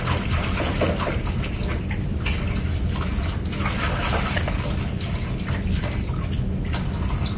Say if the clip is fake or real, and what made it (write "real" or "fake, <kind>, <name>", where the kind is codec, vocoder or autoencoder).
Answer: real